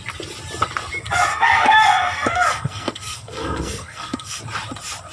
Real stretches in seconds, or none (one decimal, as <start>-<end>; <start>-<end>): 0.0-1.3; 4.4-5.1